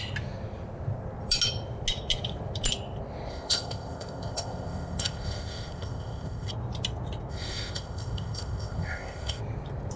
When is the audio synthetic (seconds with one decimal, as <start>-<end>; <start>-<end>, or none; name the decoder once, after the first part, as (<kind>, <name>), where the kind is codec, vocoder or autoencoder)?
3.3-6.5 (codec, ZipCodec); 7.3-9.4